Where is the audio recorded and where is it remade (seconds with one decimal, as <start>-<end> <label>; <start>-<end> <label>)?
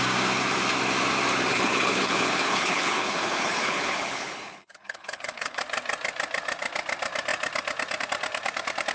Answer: 0.0-1.5 recorded; 1.5-5.6 remade; 5.6-8.9 recorded